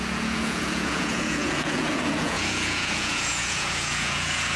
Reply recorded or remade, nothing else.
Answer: remade